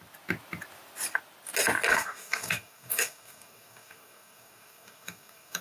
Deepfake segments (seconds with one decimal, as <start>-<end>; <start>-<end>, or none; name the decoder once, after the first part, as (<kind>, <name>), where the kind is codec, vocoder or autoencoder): 1.9-5.6 (codec, DAC)